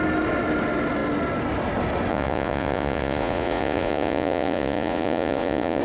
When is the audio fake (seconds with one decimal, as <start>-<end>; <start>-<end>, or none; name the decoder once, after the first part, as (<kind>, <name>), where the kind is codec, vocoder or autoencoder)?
2.1-5.8 (vocoder, Vocos)

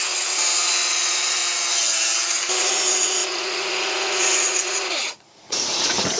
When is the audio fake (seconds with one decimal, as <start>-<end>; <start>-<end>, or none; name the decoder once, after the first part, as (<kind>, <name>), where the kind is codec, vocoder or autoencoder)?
0.0-1.4 (vocoder, Vocos); 2.6-6.2

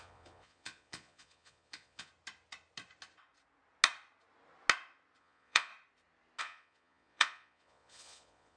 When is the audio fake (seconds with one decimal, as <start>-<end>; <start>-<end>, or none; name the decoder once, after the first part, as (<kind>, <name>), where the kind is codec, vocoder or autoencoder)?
0.0-2.1 (vocoder, Vocos); 5.2-5.7; 6.4-8.6

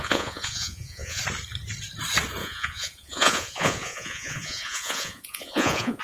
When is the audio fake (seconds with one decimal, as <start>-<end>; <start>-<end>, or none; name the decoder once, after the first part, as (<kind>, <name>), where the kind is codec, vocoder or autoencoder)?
0.0-1.2 (vocoder, Vocos); 2.4-6.0

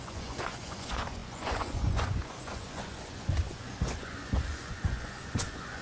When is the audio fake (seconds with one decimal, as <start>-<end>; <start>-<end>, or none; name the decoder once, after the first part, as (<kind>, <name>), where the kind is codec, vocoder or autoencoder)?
0.0-5.8 (vocoder, Vocos)

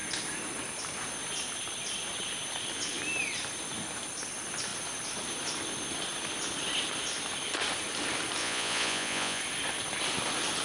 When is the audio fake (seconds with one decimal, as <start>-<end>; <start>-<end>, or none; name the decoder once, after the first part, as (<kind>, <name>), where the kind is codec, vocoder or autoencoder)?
8.4-9.4 (vocoder, Vocos)